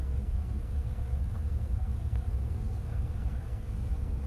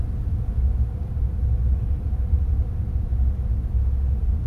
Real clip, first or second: second